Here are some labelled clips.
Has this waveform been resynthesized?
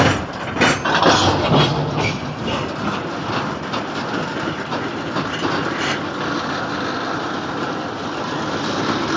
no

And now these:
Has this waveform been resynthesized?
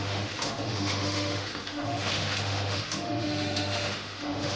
yes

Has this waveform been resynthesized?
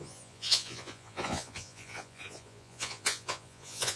yes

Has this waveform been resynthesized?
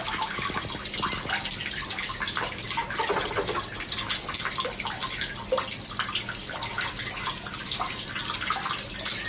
no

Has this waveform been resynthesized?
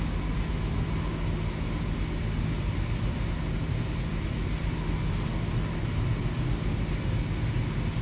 no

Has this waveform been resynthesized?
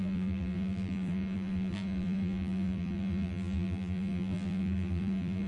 yes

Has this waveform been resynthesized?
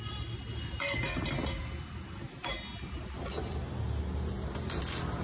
no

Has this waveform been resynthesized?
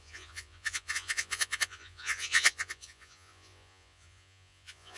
yes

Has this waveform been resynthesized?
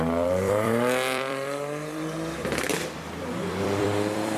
yes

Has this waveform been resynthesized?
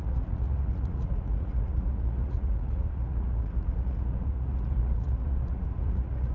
yes